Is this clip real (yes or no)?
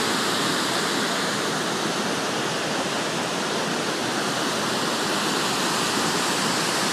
yes